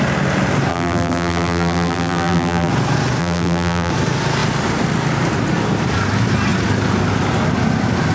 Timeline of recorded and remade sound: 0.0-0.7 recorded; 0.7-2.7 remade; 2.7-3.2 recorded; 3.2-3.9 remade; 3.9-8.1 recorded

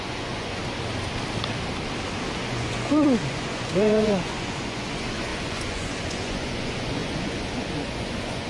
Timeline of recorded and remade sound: 0.0-0.6 remade; 0.6-2.5 recorded; 2.5-8.5 remade

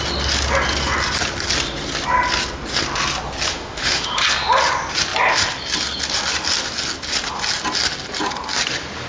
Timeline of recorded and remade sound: 0.0-3.5 recorded; 3.5-4.2 remade; 4.2-9.1 recorded

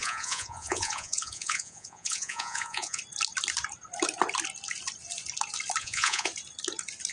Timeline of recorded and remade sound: 0.0-3.0 remade; 3.0-5.8 recorded; 5.8-6.3 remade; 6.3-7.1 recorded

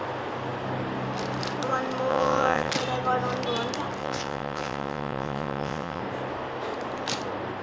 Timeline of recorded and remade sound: 0.0-2.1 recorded; 2.1-2.7 remade; 2.7-4.0 recorded; 4.0-6.0 remade; 6.0-7.6 recorded

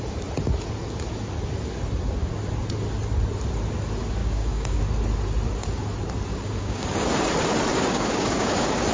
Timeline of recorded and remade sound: 0.0-4.2 recorded; 4.2-4.8 remade; 4.8-6.3 recorded; 6.3-7.1 remade; 7.1-7.7 recorded; 7.7-8.9 remade